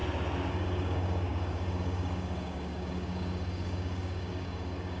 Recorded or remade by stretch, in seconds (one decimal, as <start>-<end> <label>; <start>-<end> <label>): 0.0-0.5 recorded; 0.5-5.0 remade